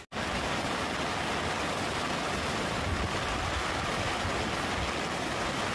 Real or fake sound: real